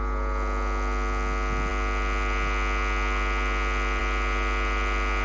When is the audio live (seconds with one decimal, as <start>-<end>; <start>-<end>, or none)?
0.0-5.2